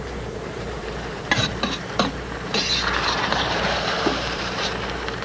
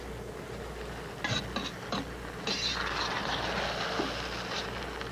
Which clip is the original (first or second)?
second